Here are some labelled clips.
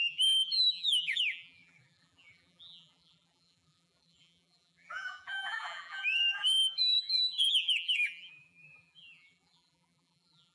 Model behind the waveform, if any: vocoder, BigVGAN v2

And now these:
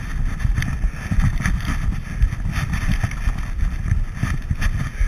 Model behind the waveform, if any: none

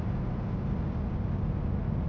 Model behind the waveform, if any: none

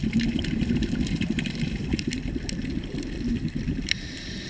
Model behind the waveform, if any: vocoder, BigVGAN v2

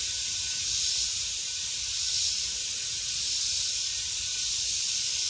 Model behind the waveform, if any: none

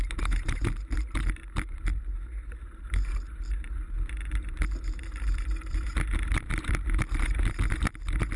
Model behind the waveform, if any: vocoder, BigVGAN v2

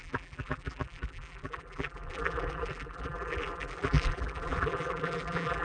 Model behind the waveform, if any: vocoder, BigVGAN v2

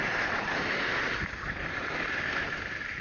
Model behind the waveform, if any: none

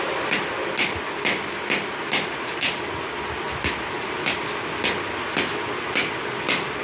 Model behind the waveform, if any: none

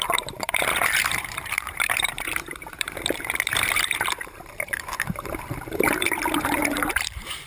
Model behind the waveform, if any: vocoder, BigVGAN v2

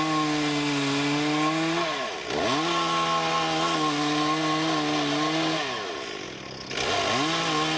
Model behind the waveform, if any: none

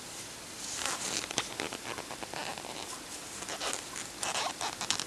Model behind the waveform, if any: vocoder, BigVGAN v2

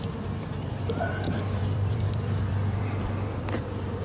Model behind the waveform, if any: vocoder, BigVGAN v2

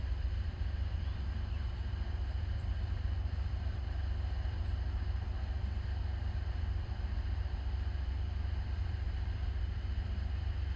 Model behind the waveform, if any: vocoder, BigVGAN v2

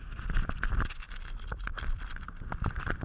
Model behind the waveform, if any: none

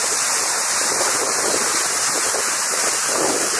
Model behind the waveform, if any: vocoder, BigVGAN v2